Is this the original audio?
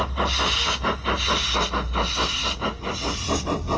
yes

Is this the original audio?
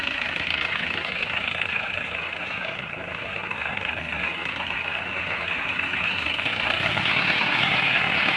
no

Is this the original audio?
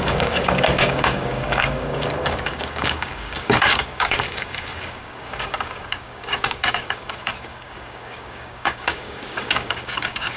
no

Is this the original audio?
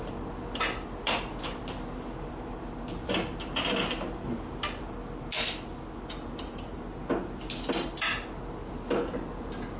yes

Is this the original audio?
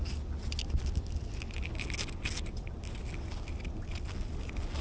yes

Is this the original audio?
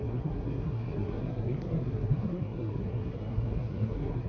no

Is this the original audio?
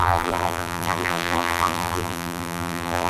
no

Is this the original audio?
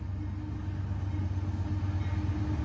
yes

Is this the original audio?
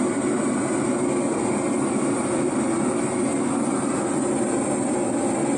yes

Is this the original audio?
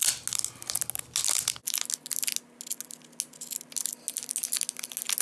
yes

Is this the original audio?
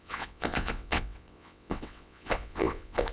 no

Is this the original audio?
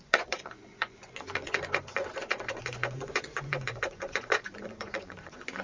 no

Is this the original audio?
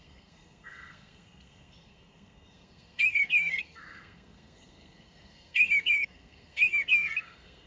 no